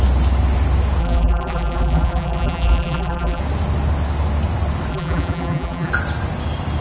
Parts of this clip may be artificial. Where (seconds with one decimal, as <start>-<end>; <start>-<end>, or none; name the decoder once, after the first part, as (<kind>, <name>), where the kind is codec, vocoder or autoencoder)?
1.0-3.4 (vocoder, BigVGAN v2); 4.9-5.9